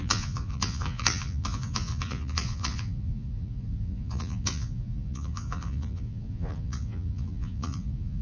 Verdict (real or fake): fake